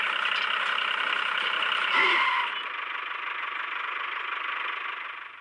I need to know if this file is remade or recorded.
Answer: recorded